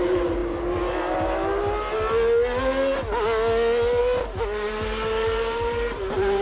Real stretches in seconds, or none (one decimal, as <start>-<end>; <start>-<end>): 0.4-4.0